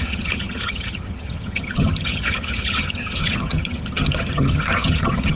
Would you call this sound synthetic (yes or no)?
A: yes